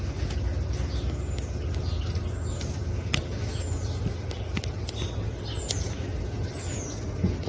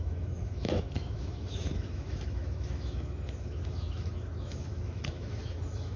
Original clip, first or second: first